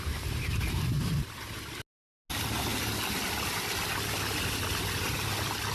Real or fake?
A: real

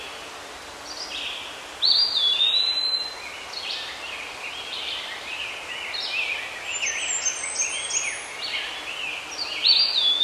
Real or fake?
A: real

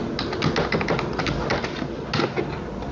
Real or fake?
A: real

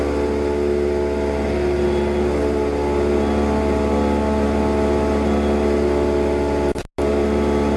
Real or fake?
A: real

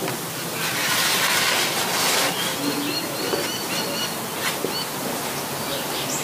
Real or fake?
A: real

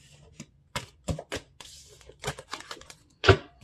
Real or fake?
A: fake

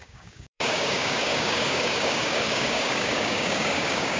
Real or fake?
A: fake